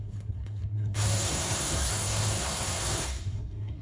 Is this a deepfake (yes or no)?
yes